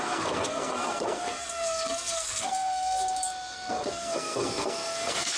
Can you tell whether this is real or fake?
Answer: fake